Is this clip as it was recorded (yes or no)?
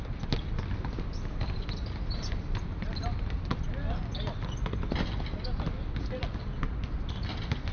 yes